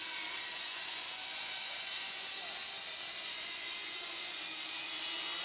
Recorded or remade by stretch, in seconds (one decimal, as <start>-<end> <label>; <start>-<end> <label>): 0.0-0.5 recorded; 0.5-2.3 remade; 2.3-3.2 recorded; 3.2-4.4 remade; 4.4-5.4 recorded